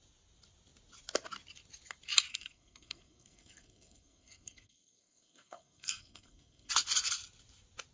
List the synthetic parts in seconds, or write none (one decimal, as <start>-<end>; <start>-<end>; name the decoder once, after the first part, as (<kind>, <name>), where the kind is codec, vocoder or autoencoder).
2.3-6.7 (codec, SNAC)